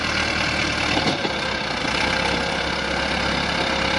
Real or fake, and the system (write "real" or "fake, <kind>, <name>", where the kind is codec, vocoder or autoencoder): real